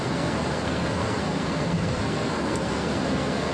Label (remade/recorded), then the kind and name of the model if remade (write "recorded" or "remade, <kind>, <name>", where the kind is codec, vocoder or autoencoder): remade, codec, SNAC